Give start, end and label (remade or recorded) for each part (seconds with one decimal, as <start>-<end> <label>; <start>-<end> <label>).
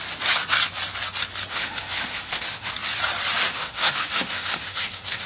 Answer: 0.0-1.5 recorded; 1.5-2.7 remade; 2.7-3.5 recorded; 3.5-5.3 remade